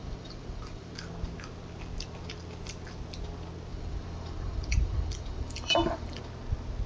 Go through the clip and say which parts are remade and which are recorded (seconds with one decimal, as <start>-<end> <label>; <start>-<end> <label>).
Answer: 0.0-0.9 remade; 0.9-3.7 recorded; 3.7-6.2 remade; 6.2-6.9 recorded